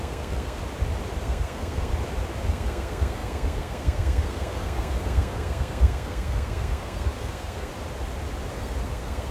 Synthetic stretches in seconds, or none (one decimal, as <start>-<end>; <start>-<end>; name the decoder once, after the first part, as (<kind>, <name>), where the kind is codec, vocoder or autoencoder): 0.0-0.6 (codec, SNAC); 1.2-1.9; 2.5-7.7; 8.5-9.3